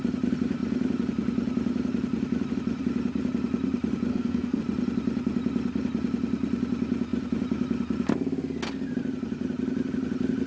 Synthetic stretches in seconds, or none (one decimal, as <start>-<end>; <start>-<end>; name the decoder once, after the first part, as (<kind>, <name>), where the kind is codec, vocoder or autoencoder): 4.1-4.6 (codec, SNAC)